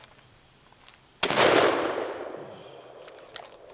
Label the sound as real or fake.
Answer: real